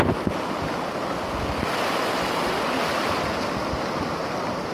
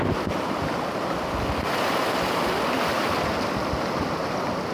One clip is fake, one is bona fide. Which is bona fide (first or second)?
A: first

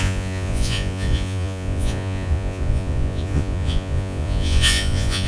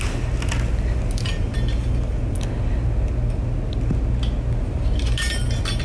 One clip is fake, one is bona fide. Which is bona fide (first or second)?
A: second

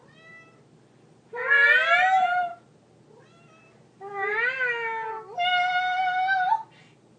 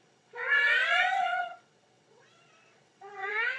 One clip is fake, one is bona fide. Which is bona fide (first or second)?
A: first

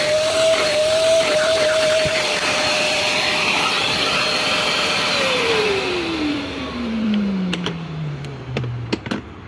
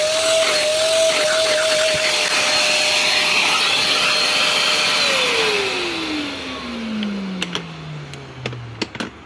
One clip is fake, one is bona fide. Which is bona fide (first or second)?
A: second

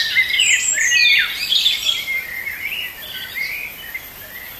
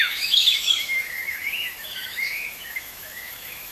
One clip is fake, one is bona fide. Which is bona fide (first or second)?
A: first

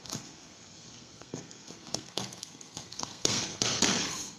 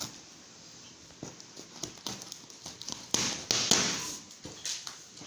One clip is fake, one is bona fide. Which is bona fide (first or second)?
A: second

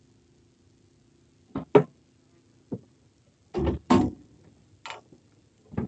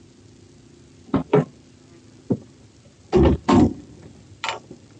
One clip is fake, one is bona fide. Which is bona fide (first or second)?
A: first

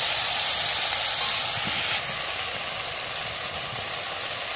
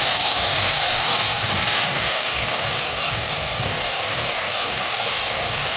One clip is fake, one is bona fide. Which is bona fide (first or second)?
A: first